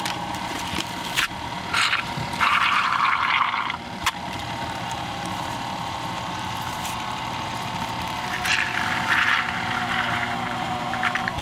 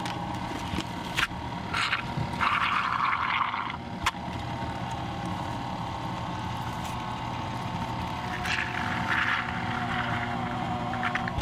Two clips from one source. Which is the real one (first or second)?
second